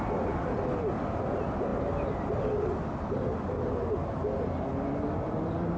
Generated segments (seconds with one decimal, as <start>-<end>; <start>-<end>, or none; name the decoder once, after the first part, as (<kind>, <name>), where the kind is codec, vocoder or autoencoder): none